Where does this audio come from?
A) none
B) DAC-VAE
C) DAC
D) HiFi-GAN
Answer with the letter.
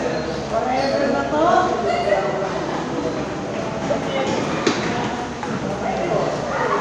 A